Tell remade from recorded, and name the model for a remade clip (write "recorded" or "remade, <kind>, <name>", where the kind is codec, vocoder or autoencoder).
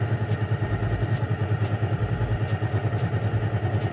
recorded